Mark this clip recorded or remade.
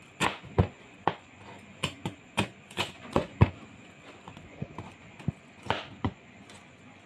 remade